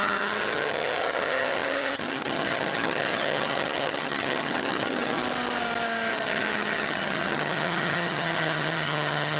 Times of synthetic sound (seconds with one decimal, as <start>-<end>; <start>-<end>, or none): 0.0-5.2; 6.1-9.4